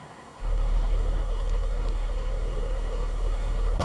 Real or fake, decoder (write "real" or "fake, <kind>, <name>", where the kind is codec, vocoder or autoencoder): fake, codec, SNAC